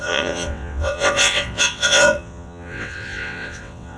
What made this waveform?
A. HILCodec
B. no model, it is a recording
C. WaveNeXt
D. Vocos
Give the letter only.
C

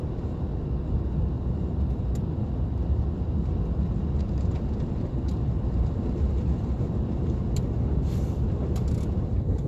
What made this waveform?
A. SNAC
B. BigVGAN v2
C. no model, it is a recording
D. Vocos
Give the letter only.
C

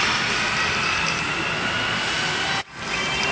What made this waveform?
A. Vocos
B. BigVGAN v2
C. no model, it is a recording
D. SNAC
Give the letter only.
C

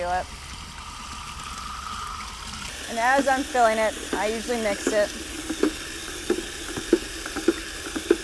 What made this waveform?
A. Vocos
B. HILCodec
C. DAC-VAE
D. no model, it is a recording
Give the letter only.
D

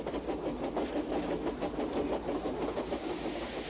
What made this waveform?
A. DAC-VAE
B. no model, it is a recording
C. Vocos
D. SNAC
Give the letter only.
B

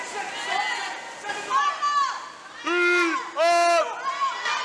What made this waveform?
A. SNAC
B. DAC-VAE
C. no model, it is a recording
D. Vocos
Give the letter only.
C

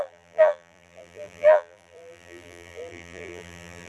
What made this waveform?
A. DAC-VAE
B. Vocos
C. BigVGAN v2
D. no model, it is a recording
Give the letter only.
C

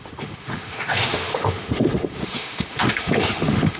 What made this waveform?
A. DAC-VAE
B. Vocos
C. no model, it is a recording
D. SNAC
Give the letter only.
A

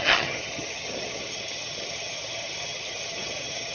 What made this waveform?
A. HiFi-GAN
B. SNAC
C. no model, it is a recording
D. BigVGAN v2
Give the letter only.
A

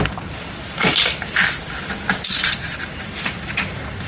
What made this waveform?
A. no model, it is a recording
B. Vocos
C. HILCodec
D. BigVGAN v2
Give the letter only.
D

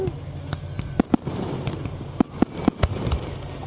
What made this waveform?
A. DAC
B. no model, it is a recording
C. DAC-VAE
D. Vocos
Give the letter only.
B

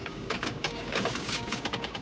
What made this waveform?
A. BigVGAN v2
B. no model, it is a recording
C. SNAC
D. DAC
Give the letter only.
D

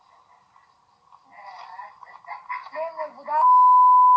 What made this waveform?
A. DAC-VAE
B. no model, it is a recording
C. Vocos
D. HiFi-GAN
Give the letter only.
B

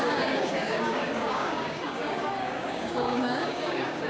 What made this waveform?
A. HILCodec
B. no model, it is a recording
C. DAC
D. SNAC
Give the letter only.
C